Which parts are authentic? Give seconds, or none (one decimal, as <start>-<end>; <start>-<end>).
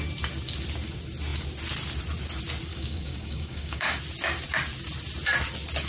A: 0.0-2.7; 4.0-5.9